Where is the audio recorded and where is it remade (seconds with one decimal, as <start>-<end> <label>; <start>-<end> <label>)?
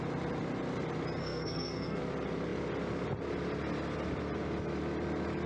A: 0.0-1.2 recorded; 1.2-2.0 remade; 2.0-5.5 recorded